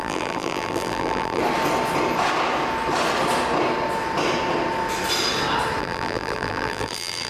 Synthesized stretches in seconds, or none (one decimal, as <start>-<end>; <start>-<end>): 0.0-1.4; 5.8-7.3